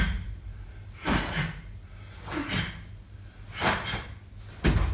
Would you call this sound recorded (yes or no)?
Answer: yes